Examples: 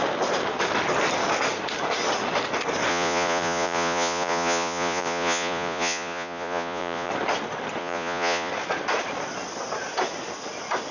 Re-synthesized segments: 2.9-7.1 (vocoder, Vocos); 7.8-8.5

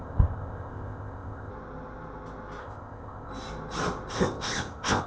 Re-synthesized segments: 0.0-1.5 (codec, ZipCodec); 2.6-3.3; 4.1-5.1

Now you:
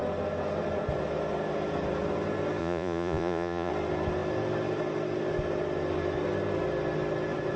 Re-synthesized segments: 2.6-3.7 (vocoder, Vocos)

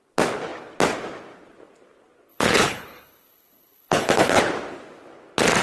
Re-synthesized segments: 2.3-4.4 (codec, HILCodec)